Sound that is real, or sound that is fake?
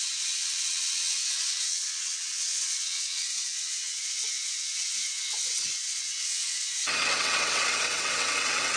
fake